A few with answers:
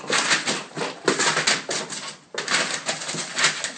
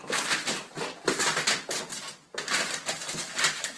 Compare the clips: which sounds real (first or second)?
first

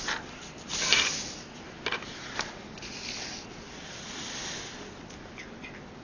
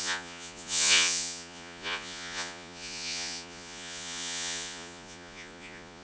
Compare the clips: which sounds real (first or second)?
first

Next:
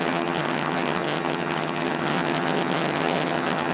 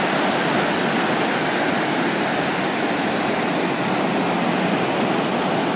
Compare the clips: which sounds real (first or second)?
second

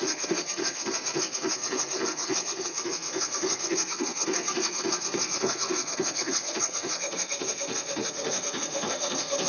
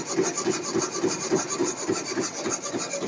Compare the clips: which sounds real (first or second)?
second